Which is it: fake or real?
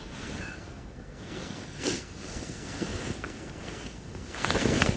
fake